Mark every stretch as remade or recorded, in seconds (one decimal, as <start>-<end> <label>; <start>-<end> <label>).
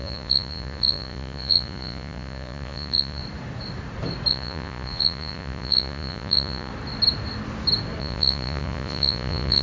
0.0-3.2 remade; 3.2-4.3 recorded; 4.3-6.7 remade; 6.7-8.0 recorded; 8.0-9.6 remade